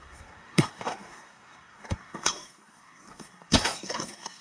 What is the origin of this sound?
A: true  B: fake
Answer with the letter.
B